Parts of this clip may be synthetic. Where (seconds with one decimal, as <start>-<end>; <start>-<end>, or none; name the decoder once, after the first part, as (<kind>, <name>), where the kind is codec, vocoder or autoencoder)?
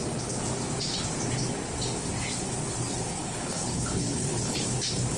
3.2-4.6 (codec, HILCodec)